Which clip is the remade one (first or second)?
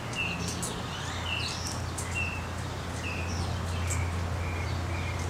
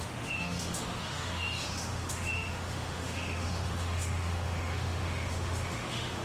second